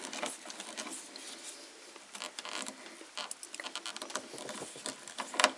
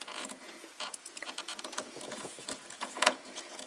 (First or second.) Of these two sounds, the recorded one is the first